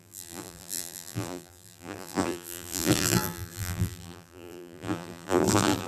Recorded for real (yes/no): no